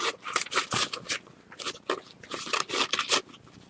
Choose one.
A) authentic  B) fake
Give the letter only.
A